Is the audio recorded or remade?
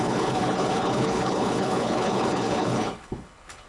remade